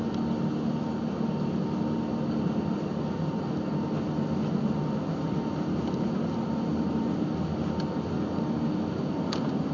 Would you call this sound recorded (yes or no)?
yes